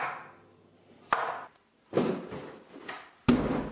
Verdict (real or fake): real